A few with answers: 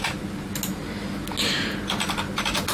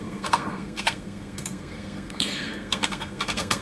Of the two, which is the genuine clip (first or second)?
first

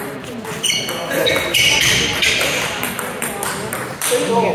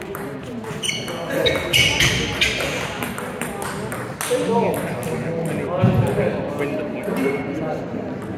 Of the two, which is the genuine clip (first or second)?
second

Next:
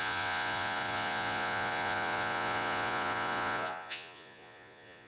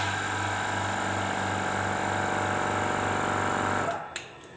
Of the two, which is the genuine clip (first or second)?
second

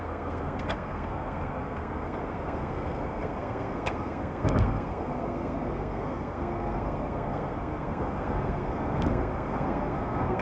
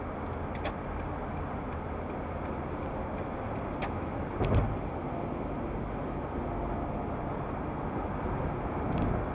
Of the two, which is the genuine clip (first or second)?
second